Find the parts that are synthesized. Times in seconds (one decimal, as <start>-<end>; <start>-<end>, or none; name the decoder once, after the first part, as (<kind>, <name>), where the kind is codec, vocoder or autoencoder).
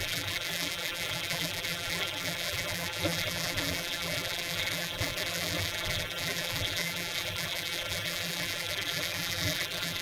0.0-10.0 (vocoder, BigVGAN v2)